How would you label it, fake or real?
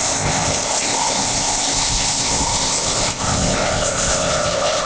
fake